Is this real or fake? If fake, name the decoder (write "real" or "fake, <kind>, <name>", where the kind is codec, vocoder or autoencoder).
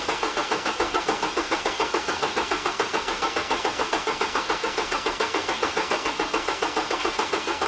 fake, codec, SNAC